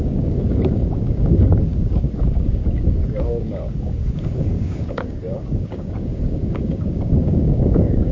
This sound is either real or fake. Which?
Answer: fake